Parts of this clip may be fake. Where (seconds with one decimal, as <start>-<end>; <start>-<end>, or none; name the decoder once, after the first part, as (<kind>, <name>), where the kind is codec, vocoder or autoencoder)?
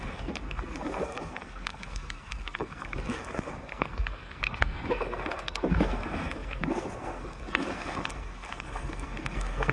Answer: 0.0-9.7 (codec, SNAC)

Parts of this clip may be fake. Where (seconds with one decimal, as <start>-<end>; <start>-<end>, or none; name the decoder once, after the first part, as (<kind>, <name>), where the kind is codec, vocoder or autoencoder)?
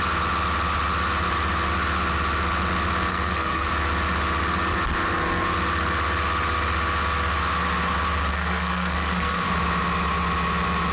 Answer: 3.1-3.7 (codec, SNAC); 8.3-9.5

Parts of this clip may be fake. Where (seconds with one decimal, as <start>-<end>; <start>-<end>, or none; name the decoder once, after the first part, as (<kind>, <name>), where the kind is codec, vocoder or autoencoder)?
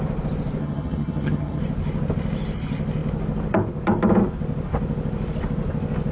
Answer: 0.6-1.6 (vocoder, HiFi-GAN)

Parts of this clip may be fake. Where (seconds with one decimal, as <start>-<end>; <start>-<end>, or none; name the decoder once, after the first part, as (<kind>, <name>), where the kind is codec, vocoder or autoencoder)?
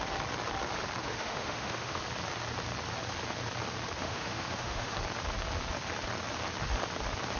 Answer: 1.0-2.0 (autoencoder, DAC-VAE); 4.0-4.9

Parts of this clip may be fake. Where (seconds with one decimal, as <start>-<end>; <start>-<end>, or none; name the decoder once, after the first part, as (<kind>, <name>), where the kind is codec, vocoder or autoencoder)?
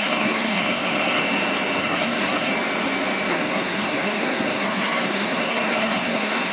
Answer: 0.0-1.2 (codec, SNAC); 1.8-2.5; 3.3-6.5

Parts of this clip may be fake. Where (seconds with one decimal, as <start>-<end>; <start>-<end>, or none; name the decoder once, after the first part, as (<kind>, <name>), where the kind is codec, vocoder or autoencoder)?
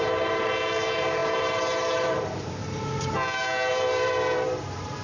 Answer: 0.0-2.6 (vocoder, BigVGAN v2); 3.7-5.0